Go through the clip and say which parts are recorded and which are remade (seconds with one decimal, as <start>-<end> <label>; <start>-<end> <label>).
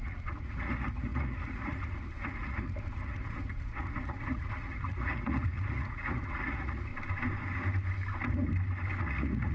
0.0-6.9 remade; 6.9-9.0 recorded; 9.0-9.5 remade